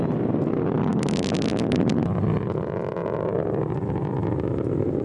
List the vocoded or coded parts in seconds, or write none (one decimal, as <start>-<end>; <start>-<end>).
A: 3.0-5.0